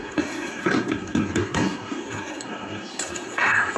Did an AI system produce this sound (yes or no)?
yes